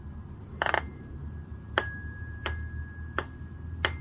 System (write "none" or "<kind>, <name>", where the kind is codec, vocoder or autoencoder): none